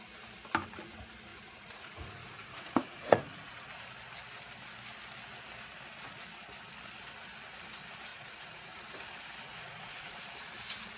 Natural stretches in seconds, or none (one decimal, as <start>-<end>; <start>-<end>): 0.0-1.3; 3.5-8.1; 8.8-9.5; 10.3-11.0